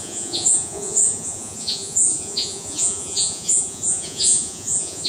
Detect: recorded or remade remade